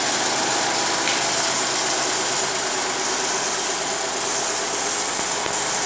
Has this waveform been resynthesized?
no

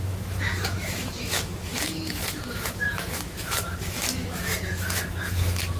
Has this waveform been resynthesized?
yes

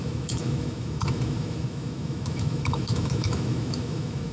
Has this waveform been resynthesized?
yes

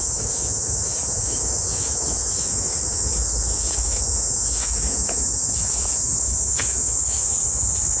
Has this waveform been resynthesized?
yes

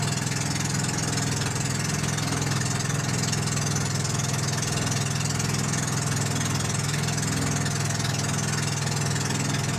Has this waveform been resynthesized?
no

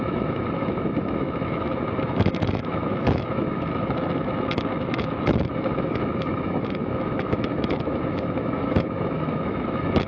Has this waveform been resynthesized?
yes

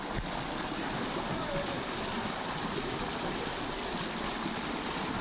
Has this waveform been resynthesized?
no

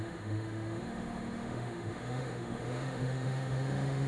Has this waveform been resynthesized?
yes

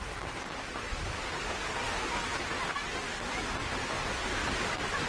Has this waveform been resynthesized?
no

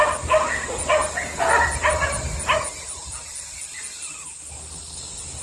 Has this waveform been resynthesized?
no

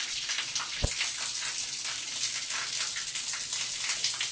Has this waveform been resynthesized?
no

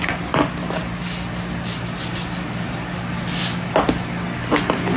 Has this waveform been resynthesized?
no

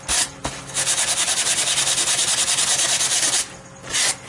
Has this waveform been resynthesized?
no